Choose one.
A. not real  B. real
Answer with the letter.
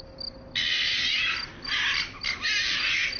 B